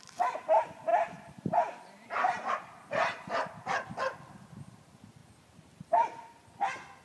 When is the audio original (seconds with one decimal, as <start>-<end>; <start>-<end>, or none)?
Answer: 0.0-0.9; 2.5-5.2; 6.5-7.0